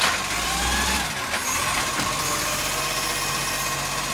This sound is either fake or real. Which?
real